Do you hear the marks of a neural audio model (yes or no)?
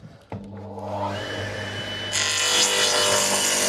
no